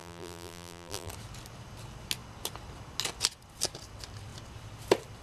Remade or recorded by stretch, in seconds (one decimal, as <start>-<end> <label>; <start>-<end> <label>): 0.0-1.1 remade; 1.1-5.2 recorded